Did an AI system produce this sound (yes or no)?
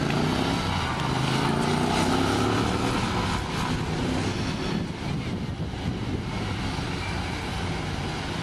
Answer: no